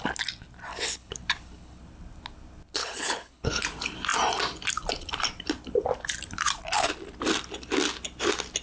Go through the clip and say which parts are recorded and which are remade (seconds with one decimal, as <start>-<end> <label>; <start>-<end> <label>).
0.0-0.7 recorded; 0.7-1.8 remade; 1.8-2.8 recorded; 2.8-3.6 remade; 3.6-8.6 recorded